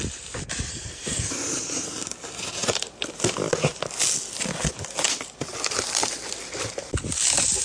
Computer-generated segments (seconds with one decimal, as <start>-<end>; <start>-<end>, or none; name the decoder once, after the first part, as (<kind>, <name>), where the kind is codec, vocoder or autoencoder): 0.7-1.3 (codec, SNAC)